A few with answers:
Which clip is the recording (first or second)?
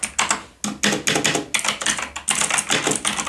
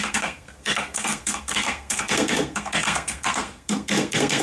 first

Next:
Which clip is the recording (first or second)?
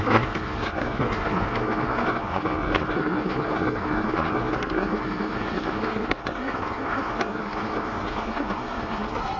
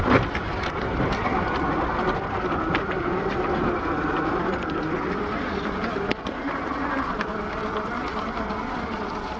second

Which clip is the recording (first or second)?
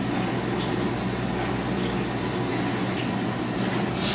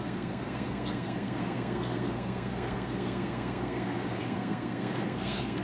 first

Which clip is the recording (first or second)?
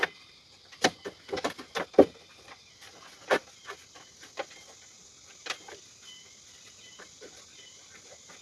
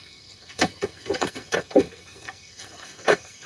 first